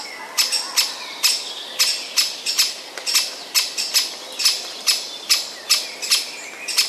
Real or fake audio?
real